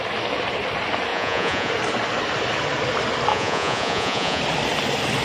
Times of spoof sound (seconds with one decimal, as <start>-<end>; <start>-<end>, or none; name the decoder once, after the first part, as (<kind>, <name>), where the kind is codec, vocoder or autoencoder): 1.1-1.7 (vocoder, Vocos); 3.3-4.4